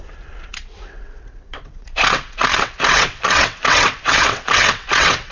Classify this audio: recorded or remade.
remade